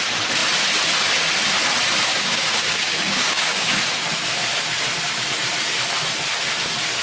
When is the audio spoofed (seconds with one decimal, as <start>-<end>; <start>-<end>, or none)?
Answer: 2.1-3.7